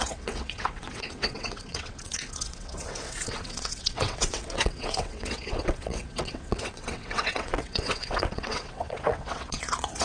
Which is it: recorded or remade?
remade